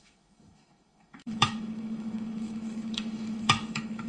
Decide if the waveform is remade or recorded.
remade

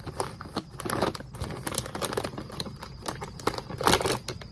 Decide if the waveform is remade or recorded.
recorded